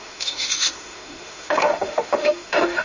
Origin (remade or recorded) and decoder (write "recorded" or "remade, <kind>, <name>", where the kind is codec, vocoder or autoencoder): remade, autoencoder, DAC-VAE